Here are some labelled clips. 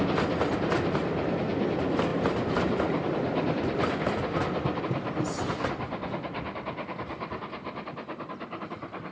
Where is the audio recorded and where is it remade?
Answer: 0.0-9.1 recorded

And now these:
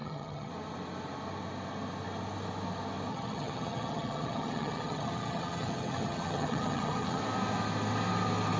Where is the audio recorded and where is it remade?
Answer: 0.0-0.5 remade; 0.5-3.1 recorded; 3.1-7.2 remade; 7.2-8.6 recorded

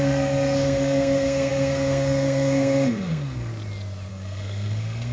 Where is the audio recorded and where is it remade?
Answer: 0.0-3.5 remade; 3.5-4.1 recorded; 4.1-5.1 remade

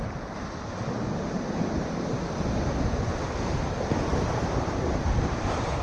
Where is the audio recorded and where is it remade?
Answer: 0.0-5.8 recorded

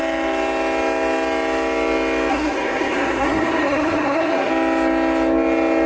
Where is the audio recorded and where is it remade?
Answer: 0.0-2.3 recorded; 2.3-4.5 remade; 4.5-5.9 recorded

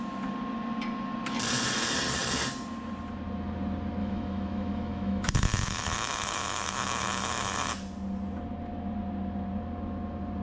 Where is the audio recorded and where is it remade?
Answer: 0.0-4.0 recorded; 4.0-7.7 remade; 7.7-10.4 recorded

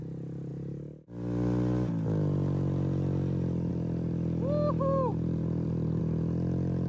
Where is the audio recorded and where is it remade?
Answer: 0.0-5.1 recorded; 5.1-6.0 remade; 6.0-6.9 recorded

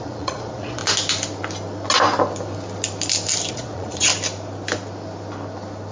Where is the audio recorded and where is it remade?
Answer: 0.0-0.8 remade; 0.8-3.5 recorded; 3.5-4.1 remade; 4.1-5.9 recorded